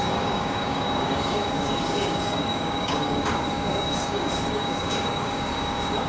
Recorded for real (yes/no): no